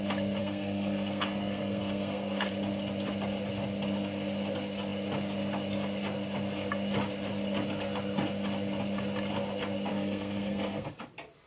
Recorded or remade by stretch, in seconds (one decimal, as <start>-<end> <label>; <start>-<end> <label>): 0.0-0.4 recorded; 0.4-2.5 remade; 2.5-9.9 recorded; 9.9-10.9 remade; 10.9-11.5 recorded